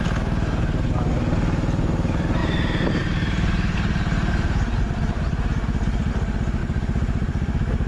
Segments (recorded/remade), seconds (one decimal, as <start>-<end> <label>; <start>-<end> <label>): 0.0-2.4 recorded; 2.4-6.1 remade; 6.1-6.6 recorded; 6.6-7.9 remade